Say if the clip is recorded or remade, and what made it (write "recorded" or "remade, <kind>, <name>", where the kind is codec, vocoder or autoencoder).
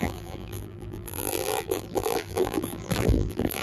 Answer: remade, vocoder, BigVGAN v2